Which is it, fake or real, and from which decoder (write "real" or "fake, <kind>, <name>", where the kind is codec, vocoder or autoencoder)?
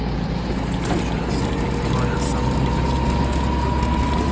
real